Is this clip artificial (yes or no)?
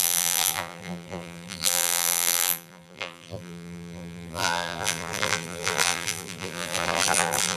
yes